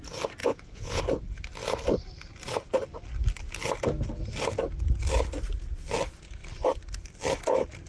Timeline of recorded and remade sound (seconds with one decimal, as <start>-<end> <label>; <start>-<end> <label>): 0.0-0.4 recorded; 0.4-1.0 remade; 1.0-7.9 recorded